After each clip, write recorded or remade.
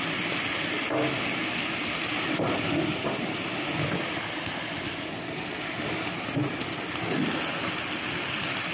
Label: recorded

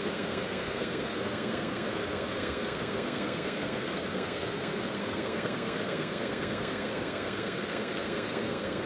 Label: remade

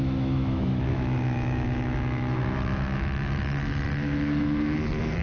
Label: remade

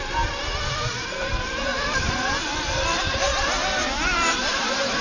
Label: remade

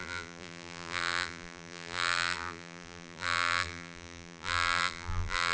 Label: remade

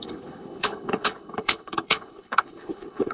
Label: remade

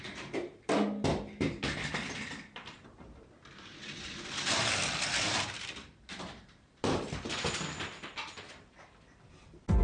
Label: remade